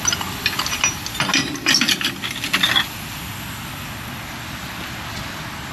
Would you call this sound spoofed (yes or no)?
no